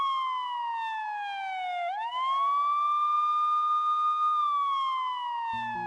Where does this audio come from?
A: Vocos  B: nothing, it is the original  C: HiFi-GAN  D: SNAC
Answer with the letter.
B